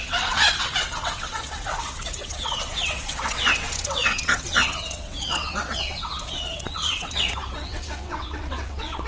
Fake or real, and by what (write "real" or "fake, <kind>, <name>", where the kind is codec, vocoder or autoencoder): fake, vocoder, WaveNeXt